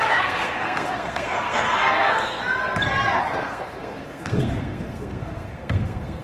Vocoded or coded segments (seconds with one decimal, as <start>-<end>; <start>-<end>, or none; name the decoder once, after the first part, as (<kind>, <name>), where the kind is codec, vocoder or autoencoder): 0.0-2.4 (codec, SNAC); 3.2-6.2